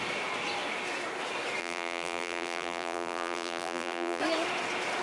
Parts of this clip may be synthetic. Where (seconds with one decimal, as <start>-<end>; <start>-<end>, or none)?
1.6-4.2